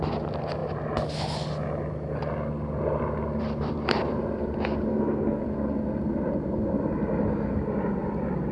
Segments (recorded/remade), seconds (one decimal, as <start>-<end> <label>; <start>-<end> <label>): 0.0-4.9 recorded; 4.9-5.4 remade; 5.4-8.5 recorded

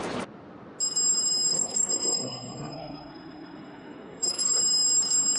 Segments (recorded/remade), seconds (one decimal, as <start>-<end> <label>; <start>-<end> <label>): 0.0-1.5 recorded; 1.5-4.6 remade; 4.6-5.4 recorded

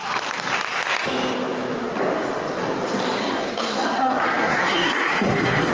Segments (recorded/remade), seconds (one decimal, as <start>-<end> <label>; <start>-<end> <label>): 0.0-3.2 recorded; 3.2-5.7 remade

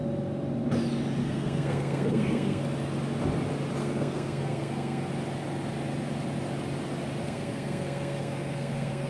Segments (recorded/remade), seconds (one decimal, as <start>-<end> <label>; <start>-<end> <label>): 0.0-1.2 recorded; 1.2-2.6 remade; 2.6-3.8 recorded; 3.8-5.1 remade; 5.1-7.2 recorded; 7.2-9.1 remade

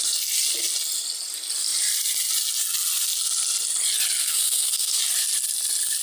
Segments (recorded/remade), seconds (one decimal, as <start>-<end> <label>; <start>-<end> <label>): 0.0-4.2 recorded; 4.2-5.0 remade; 5.0-6.0 recorded